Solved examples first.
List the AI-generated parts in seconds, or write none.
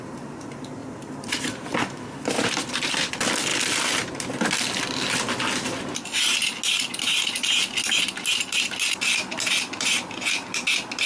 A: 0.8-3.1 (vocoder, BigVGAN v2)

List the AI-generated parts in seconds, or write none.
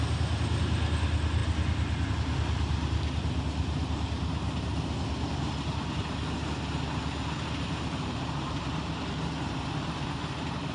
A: none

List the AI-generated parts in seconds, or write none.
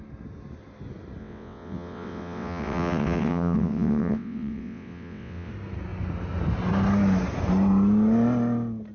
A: 1.2-5.5 (vocoder, WaveNeXt)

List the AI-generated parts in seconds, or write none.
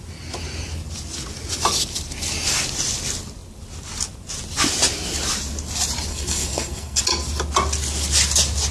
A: 6.1-7.0 (codec, SNAC)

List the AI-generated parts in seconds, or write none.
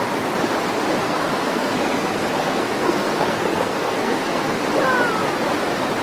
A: 1.0-4.6 (codec, SNAC)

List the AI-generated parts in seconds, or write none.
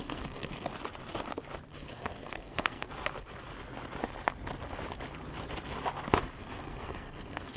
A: 0.0-0.7 (codec, SNAC); 1.7-2.9; 6.4-7.6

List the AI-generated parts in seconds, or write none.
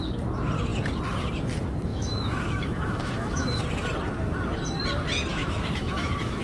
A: 1.9-3.6 (autoencoder, DAC-VAE); 5.3-6.4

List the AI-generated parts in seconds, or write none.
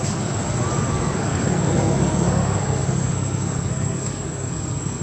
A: 0.0-0.4 (codec, SNAC); 0.9-5.0